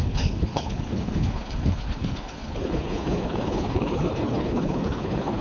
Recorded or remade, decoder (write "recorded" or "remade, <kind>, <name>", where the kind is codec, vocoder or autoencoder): remade, codec, HILCodec